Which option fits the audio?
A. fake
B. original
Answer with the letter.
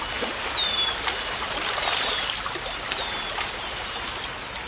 B